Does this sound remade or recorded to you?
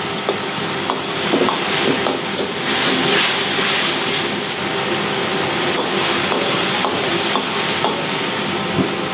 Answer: recorded